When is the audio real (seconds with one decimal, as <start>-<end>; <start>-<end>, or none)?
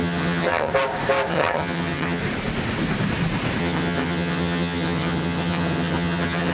0.7-1.3; 2.2-3.6